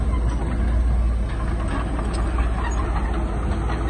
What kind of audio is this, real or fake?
real